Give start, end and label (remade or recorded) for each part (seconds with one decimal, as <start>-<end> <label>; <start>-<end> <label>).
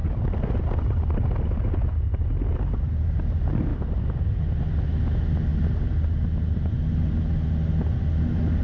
0.0-3.7 recorded; 3.7-4.4 remade; 4.4-8.6 recorded